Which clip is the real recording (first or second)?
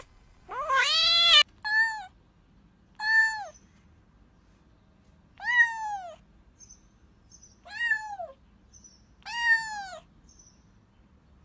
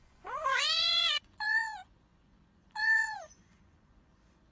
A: first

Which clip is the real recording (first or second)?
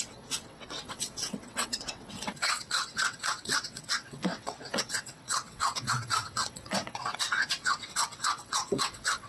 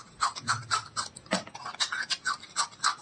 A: second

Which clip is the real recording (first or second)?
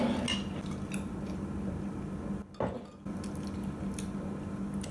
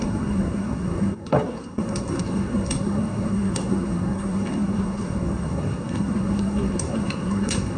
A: first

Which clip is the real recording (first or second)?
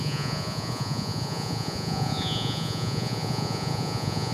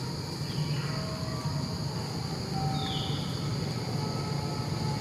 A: second